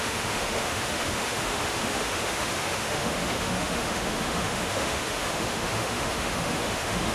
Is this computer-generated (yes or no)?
yes